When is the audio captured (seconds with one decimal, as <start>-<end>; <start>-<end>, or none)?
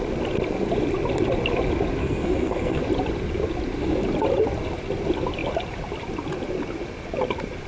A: 0.0-2.0; 2.8-7.7